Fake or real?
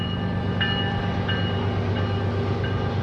real